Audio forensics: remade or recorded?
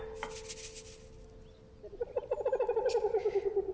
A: recorded